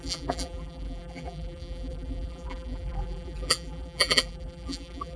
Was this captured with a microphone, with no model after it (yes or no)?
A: no